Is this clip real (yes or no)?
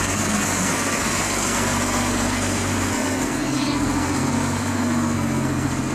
no